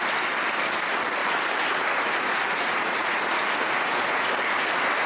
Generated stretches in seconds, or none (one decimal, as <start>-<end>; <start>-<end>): 1.2-4.3